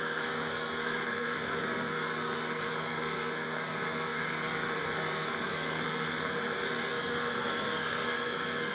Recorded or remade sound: remade